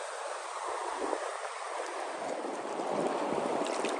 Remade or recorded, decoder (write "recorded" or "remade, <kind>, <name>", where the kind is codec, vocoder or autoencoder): recorded